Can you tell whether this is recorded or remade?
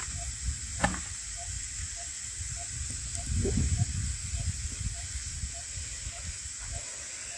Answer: recorded